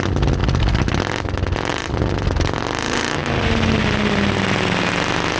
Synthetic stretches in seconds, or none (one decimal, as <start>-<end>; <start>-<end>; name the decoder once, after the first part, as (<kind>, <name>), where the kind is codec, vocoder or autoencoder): 1.7-2.5 (vocoder, BigVGAN v2)